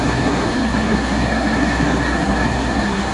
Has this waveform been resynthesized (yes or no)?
yes